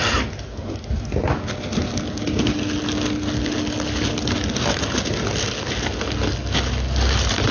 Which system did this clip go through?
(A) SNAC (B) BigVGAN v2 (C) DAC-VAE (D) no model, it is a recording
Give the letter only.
D